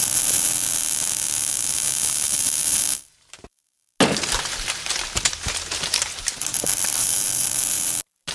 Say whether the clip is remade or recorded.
recorded